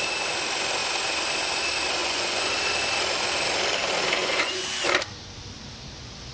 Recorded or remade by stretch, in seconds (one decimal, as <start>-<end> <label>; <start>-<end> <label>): 0.0-2.0 recorded; 2.0-2.5 remade; 2.5-4.2 recorded; 4.2-4.8 remade; 4.8-6.3 recorded